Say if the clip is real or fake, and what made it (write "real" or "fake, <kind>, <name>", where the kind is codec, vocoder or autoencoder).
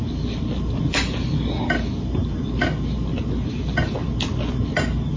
real